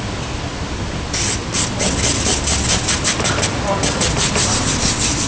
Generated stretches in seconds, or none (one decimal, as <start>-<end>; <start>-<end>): none